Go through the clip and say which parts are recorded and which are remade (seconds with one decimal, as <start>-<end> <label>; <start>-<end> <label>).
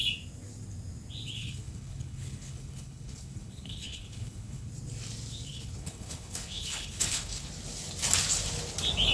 0.0-1.4 recorded; 1.4-4.7 remade; 4.7-5.5 recorded; 5.5-7.5 remade; 7.5-9.1 recorded